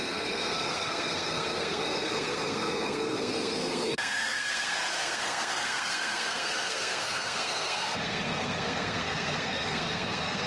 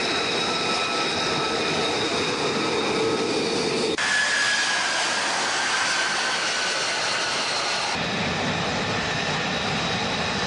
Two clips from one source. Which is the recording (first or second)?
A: second